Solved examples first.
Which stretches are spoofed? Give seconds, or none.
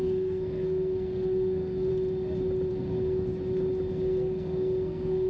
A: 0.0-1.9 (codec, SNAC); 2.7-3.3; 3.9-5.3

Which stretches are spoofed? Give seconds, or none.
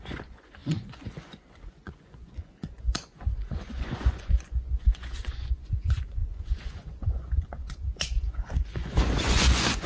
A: 0.0-9.9 (vocoder, Vocos)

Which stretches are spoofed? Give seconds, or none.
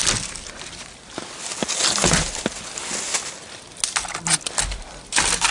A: none